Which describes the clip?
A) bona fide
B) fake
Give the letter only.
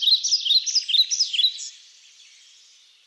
A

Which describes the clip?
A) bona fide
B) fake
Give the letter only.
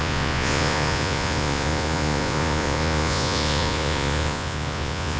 B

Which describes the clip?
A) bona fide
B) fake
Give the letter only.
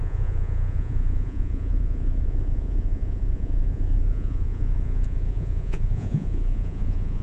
B